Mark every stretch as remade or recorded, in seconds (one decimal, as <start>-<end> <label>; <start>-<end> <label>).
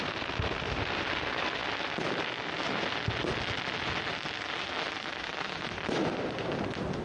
0.0-7.0 recorded